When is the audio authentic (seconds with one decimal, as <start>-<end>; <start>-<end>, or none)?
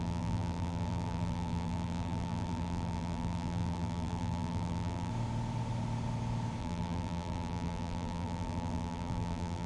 5.1-6.6